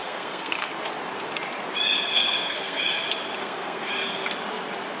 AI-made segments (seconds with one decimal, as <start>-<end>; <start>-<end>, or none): 0.0-0.7; 2.1-2.8; 3.4-3.9